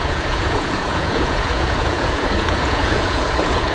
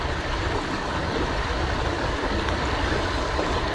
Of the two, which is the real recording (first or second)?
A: second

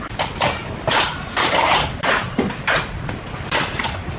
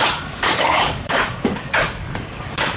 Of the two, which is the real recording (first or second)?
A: first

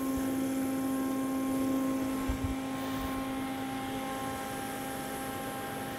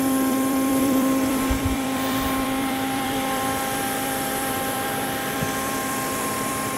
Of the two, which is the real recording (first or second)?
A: first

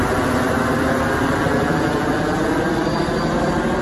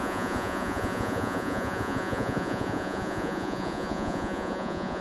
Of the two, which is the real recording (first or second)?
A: first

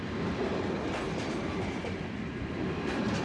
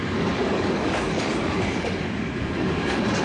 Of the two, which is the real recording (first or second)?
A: first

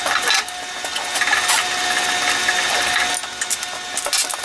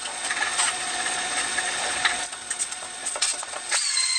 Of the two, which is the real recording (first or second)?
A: first